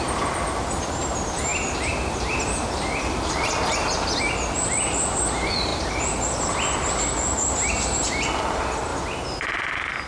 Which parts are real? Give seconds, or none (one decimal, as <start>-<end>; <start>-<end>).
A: 0.0-10.1